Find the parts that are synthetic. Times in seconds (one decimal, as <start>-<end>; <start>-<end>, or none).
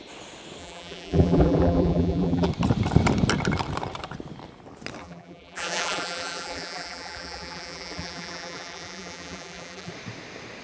0.6-2.5; 5.0-9.9